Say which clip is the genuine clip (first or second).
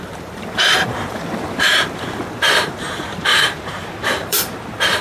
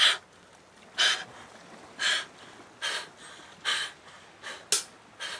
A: second